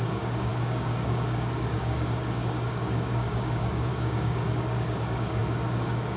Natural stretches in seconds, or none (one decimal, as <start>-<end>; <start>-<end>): none